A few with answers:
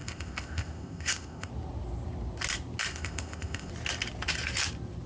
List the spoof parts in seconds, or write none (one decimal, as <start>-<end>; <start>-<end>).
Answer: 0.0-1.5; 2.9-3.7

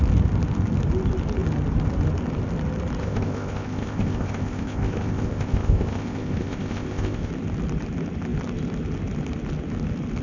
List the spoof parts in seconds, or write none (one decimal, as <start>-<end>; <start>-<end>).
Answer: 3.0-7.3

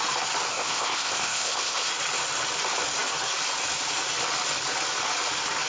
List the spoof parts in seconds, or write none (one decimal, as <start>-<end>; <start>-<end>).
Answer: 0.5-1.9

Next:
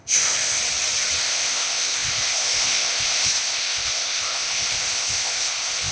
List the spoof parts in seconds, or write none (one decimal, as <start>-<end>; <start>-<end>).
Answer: 0.0-0.6; 1.2-5.9

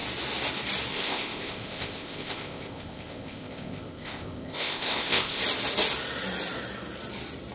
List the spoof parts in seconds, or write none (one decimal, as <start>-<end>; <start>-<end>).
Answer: 0.9-5.4

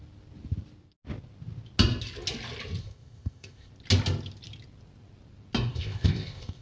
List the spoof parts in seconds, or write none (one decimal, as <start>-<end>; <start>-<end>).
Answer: 2.8-3.7; 5.7-6.6

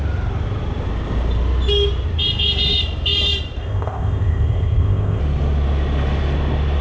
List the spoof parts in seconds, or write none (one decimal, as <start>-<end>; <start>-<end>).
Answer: 3.6-5.2

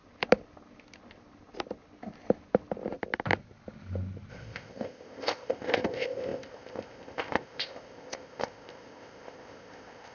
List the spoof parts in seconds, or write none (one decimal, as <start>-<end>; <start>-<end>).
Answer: 4.3-10.1